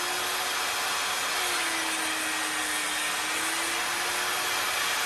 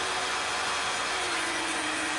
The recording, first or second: first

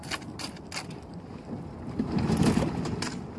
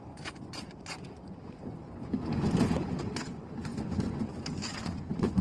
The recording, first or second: first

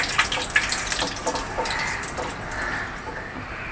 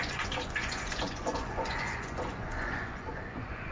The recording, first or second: first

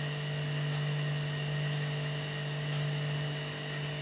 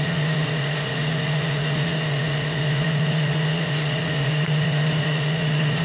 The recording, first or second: first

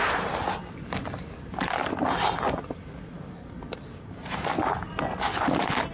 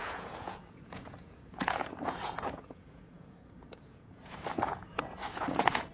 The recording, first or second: first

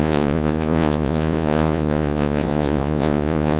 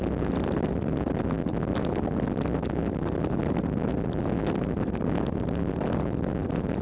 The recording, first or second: second